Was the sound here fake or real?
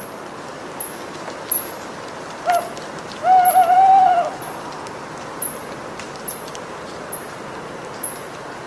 real